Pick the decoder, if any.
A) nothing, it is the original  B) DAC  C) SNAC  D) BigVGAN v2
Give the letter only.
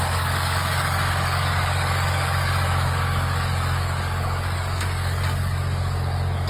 B